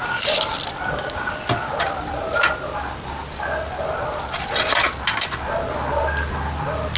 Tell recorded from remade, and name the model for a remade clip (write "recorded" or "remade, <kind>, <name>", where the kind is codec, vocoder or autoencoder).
recorded